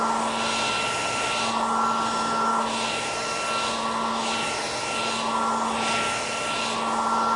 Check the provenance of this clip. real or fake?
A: real